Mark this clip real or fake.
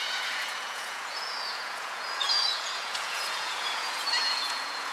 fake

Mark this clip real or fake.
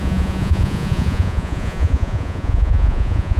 fake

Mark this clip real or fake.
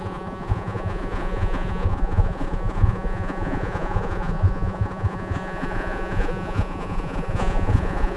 fake